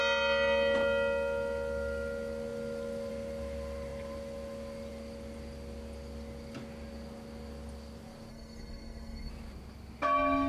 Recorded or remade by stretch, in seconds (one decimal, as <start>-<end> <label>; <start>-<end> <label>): 0.0-8.3 recorded; 8.3-9.3 remade; 9.3-10.5 recorded